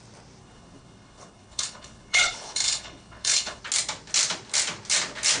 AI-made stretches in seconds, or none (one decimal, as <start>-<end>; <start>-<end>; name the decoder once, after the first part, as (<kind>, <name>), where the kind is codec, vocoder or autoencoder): 0.4-3.6 (codec, HILCodec)